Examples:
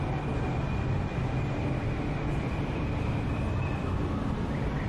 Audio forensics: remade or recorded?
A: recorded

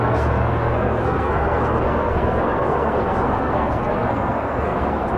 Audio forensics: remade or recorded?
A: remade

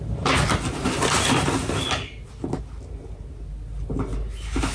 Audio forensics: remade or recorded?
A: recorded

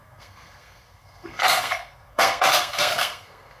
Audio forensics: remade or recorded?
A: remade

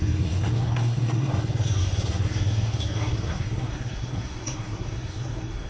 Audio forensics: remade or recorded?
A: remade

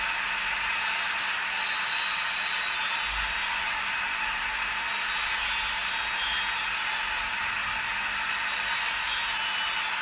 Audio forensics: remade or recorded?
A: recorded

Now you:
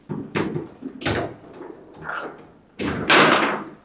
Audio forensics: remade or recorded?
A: recorded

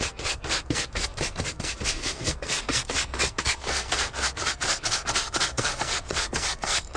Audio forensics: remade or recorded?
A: remade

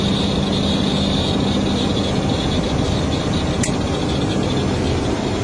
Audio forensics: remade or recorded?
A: recorded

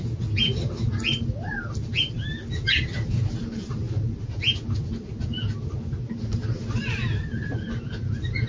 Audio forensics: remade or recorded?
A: recorded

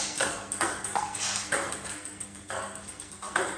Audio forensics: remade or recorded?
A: remade